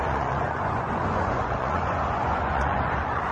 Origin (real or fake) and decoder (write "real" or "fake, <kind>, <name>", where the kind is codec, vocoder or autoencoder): fake, vocoder, Vocos